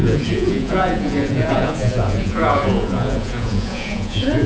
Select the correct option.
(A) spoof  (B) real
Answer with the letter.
A